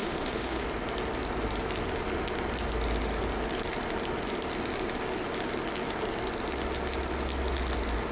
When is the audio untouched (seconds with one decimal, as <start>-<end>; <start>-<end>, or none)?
0.6-8.1